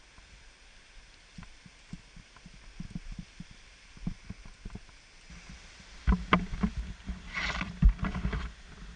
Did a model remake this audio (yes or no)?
no